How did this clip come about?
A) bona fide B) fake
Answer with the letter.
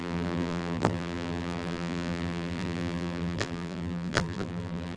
B